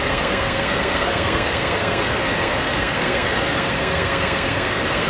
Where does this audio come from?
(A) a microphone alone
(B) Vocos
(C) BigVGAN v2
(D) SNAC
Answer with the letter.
D